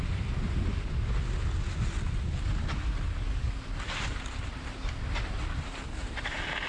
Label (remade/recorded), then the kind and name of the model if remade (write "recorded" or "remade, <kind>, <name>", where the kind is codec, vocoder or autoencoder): recorded